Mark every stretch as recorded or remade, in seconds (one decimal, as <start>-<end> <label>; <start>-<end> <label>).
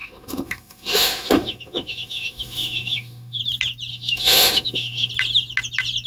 0.0-3.4 remade; 3.4-3.9 recorded; 3.9-5.1 remade; 5.1-6.1 recorded